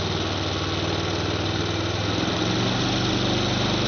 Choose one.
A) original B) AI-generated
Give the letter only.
A